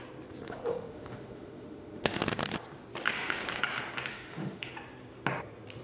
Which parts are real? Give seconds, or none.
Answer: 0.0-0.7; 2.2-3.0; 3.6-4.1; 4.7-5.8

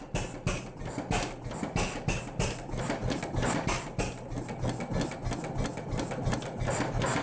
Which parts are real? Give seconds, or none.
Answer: 0.0-7.2